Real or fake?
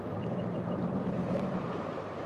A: fake